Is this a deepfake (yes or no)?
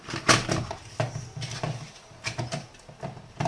no